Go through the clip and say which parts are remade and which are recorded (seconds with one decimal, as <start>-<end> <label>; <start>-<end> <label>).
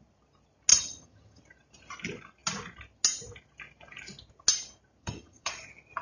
0.0-0.7 recorded; 0.7-1.4 remade; 1.4-5.0 recorded; 5.0-5.5 remade; 5.5-6.0 recorded